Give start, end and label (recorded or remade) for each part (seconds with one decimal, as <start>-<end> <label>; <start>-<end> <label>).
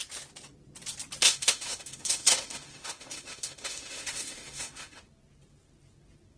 0.0-1.2 recorded; 1.2-5.0 remade; 5.0-6.4 recorded